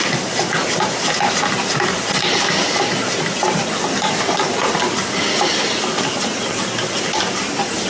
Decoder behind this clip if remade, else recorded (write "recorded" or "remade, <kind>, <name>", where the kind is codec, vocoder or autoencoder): recorded